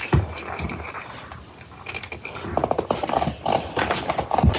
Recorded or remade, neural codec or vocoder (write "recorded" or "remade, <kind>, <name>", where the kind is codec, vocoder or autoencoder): recorded